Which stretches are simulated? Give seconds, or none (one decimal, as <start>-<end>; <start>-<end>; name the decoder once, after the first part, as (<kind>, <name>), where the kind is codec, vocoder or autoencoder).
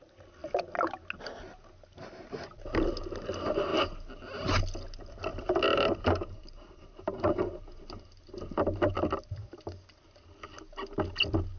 5.3-8.9 (vocoder, BigVGAN v2)